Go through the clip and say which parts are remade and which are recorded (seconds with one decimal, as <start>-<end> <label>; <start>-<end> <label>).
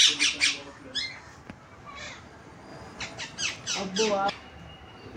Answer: 0.0-1.8 recorded; 1.8-2.7 remade; 2.7-3.2 recorded; 3.2-5.2 remade